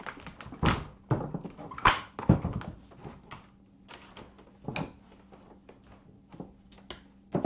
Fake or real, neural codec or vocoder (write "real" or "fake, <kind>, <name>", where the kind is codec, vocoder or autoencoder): real